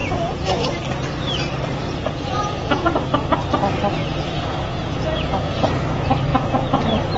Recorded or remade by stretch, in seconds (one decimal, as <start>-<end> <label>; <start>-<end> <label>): 0.0-0.8 remade; 0.8-2.0 recorded; 2.0-2.9 remade; 2.9-4.0 recorded; 4.0-5.7 remade; 5.7-6.3 recorded; 6.3-6.8 remade; 6.8-7.2 recorded

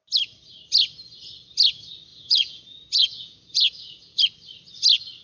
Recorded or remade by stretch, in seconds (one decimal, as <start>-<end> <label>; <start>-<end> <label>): 0.0-2.1 recorded; 2.1-4.2 remade; 4.2-5.2 recorded

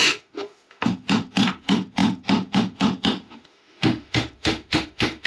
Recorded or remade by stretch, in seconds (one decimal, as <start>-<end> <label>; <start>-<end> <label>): 0.0-5.3 remade

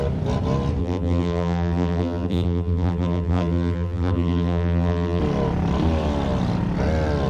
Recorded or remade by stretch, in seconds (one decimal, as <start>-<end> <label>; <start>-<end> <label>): 0.0-0.8 recorded; 0.8-5.2 remade; 5.2-7.3 recorded

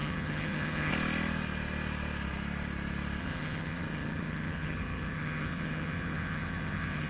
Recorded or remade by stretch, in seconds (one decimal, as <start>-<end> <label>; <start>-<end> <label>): 0.0-0.9 remade; 0.9-3.2 recorded; 3.2-7.1 remade